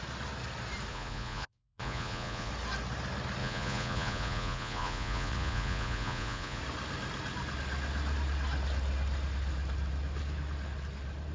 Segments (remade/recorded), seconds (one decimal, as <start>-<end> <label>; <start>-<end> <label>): 0.0-0.9 recorded; 0.9-2.5 remade; 2.5-3.4 recorded; 3.4-6.6 remade; 6.6-11.3 recorded